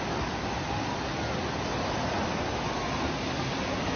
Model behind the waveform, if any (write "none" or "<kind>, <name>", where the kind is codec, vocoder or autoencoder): none